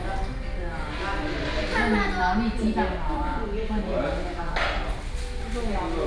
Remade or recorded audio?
recorded